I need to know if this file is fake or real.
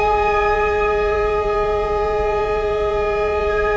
fake